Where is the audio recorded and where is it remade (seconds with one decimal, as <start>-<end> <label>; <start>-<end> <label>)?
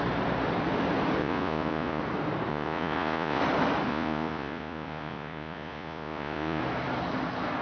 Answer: 0.0-1.2 recorded; 1.2-2.0 remade; 2.0-2.5 recorded; 2.5-3.4 remade; 3.4-3.9 recorded; 3.9-6.6 remade; 6.6-7.6 recorded